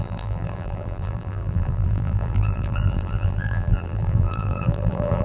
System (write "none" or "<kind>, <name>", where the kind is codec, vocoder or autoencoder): vocoder, BigVGAN v2